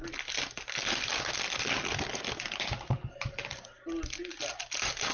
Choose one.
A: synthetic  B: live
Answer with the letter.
B